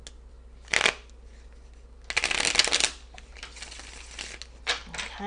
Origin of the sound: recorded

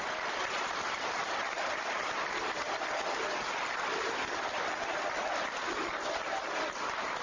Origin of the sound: recorded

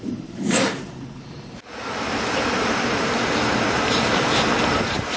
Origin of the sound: remade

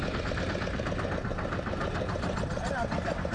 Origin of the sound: recorded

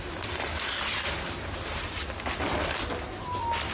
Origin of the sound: recorded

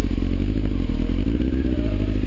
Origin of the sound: recorded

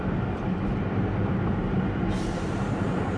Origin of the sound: remade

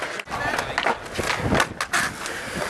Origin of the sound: recorded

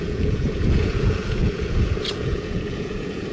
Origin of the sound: remade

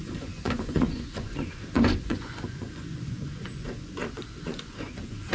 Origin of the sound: remade